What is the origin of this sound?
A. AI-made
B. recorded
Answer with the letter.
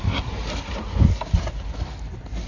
B